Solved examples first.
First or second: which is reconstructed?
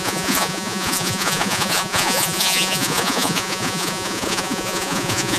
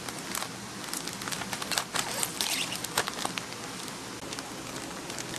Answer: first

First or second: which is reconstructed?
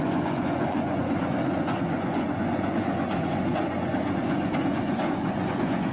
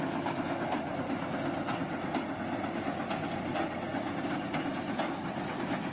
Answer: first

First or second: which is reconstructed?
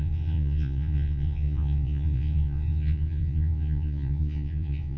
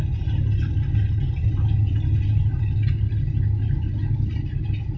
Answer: first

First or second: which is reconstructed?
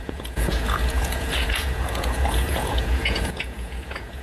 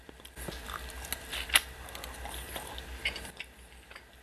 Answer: first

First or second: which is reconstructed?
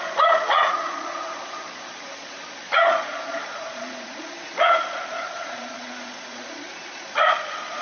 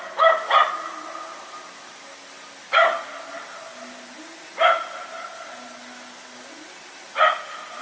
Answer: first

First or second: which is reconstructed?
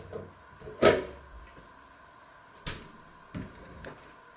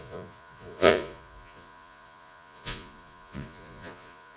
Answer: second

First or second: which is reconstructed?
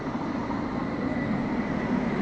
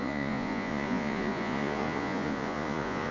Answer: second